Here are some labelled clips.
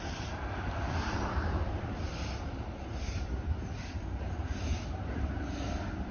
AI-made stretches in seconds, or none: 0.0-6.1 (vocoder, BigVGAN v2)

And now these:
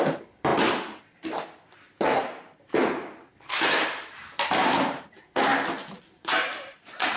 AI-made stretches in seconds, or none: 0.0-5.5 (vocoder, BigVGAN v2); 6.1-7.2

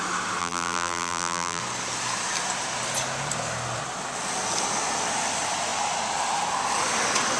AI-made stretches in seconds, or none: 0.4-1.6 (vocoder, BigVGAN v2)

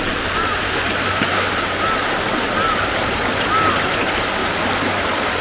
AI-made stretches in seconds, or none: none

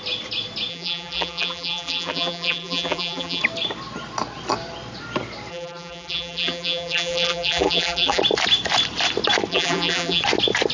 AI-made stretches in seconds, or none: 0.7-3.4 (vocoder, BigVGAN v2); 5.5-8.2; 9.5-10.2

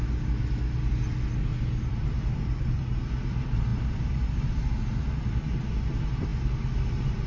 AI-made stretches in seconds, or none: 1.5-3.0 (vocoder, BigVGAN v2); 3.7-5.0

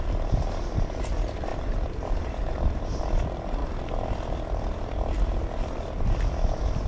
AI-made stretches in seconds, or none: 1.5-3.0 (vocoder, BigVGAN v2)

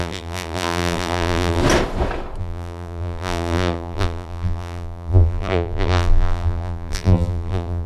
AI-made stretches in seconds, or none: 0.0-1.6 (vocoder, BigVGAN v2); 2.4-7.9